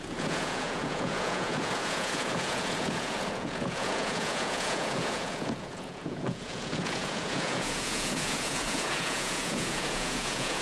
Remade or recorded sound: remade